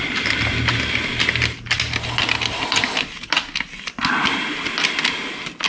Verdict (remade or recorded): recorded